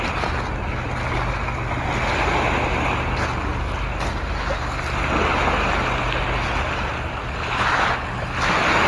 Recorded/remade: recorded